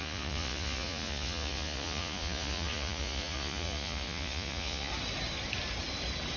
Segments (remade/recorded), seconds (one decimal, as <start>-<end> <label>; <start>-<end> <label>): 0.0-4.9 remade; 4.9-6.4 recorded